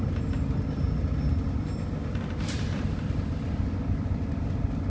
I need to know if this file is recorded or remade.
recorded